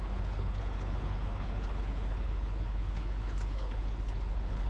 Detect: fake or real fake